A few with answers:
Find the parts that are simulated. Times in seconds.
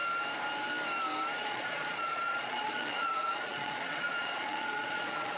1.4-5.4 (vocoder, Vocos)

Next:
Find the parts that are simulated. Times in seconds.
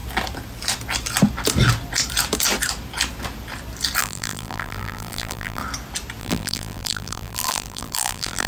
4.0-5.6 (vocoder, BigVGAN v2); 6.2-8.5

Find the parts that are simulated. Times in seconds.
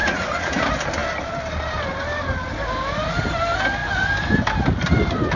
0.0-0.6 (vocoder, Vocos)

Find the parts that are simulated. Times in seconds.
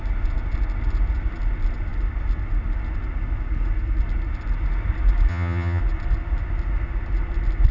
5.3-5.8 (vocoder, HiFi-GAN)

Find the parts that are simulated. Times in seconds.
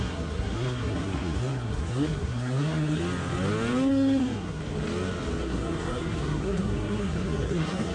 0.0-3.0 (codec, SNAC); 3.9-4.6; 5.4-7.9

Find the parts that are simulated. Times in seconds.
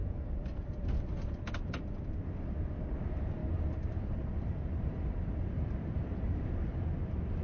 0.0-1.9 (vocoder, BigVGAN v2); 3.4-6.8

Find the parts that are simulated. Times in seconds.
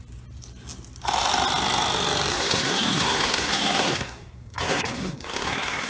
2.3-5.9 (codec, SNAC)